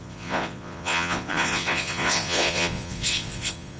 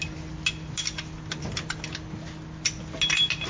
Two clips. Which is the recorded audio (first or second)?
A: second